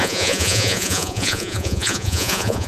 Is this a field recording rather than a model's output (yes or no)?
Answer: no